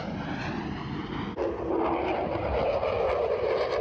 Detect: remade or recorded recorded